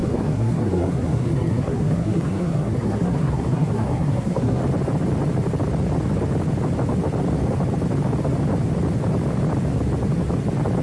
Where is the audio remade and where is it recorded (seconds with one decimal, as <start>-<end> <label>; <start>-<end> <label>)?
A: 0.0-4.6 remade; 4.6-10.8 recorded